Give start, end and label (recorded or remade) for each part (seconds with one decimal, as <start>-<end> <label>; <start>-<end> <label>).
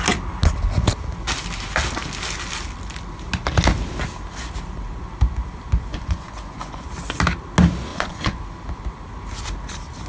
0.0-5.9 recorded; 5.9-6.8 remade; 6.8-7.9 recorded; 7.9-8.4 remade; 8.4-10.1 recorded